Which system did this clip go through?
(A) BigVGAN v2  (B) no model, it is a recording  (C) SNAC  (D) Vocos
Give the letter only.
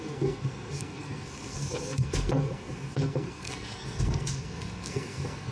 C